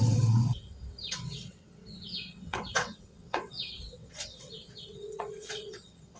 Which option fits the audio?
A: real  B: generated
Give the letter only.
B